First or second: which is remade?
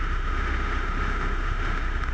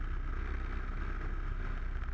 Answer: first